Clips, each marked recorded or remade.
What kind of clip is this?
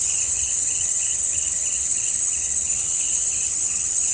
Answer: remade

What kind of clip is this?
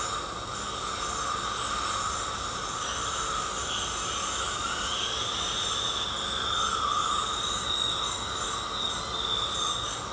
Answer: recorded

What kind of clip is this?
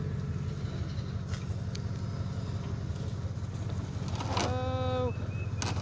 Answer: recorded